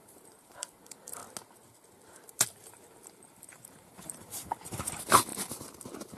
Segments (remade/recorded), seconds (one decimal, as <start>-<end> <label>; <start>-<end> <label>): 0.0-1.2 remade; 1.2-2.1 recorded; 2.1-5.3 remade; 5.3-6.2 recorded